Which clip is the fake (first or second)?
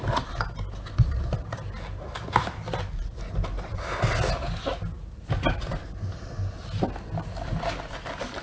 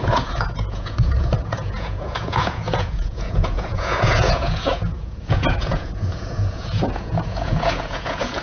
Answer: second